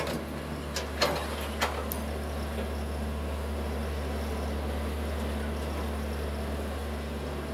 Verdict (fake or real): real